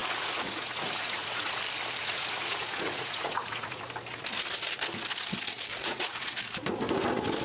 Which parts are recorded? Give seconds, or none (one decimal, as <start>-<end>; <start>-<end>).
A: 1.6-2.0; 3.8-5.7; 6.4-7.4

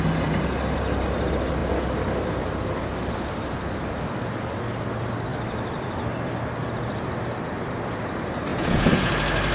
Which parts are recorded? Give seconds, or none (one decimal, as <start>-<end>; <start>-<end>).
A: 0.0-8.5; 9.1-9.5

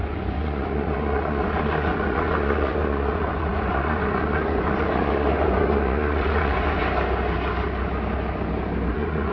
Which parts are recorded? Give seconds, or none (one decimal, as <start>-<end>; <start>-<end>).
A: 6.8-8.9

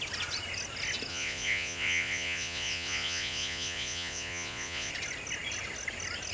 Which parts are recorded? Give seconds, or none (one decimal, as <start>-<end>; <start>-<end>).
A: 0.0-1.1; 4.9-6.3

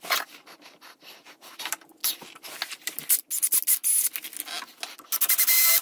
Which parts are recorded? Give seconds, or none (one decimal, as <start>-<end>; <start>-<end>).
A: 0.0-5.8

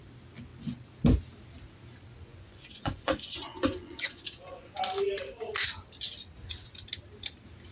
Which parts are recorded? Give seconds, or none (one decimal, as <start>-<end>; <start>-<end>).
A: 0.0-2.3; 4.8-7.7

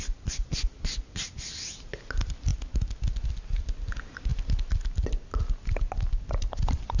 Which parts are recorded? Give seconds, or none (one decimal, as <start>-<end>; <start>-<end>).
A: 0.0-7.0